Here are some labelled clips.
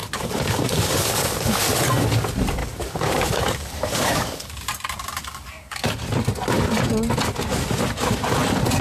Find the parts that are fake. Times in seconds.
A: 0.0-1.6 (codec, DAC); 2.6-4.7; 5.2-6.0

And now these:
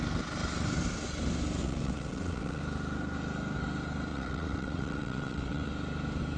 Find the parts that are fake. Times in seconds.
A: 1.6-2.6 (vocoder, WaveNeXt); 4.1-5.7

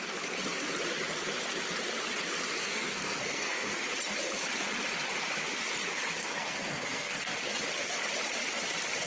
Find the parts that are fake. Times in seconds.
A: 2.6-3.8 (codec, SNAC); 6.2-7.3

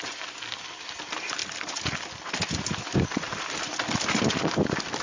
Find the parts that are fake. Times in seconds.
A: none

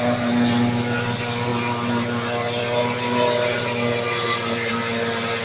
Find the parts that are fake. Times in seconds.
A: none

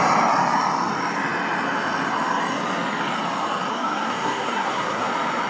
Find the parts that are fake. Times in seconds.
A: 3.7-5.1 (codec, SNAC)

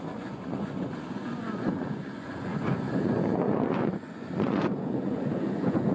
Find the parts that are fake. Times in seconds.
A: 0.0-5.9 (vocoder, Vocos)